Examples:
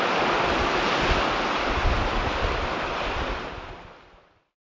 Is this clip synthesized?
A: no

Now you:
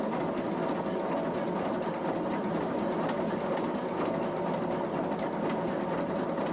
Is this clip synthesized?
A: no